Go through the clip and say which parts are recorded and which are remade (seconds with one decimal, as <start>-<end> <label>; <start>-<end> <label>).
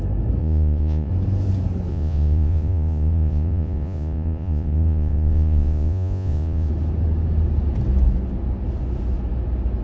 0.0-0.4 recorded; 0.4-1.1 remade; 1.1-1.9 recorded; 1.9-6.7 remade; 6.7-9.8 recorded